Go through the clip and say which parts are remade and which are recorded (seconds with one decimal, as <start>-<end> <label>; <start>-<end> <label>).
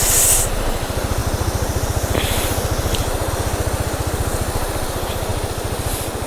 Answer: 0.0-6.3 recorded